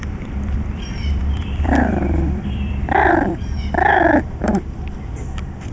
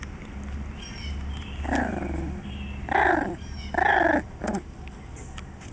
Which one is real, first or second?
second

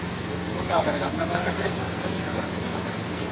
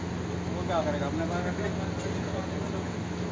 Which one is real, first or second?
second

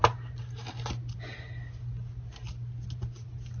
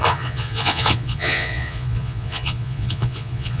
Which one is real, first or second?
first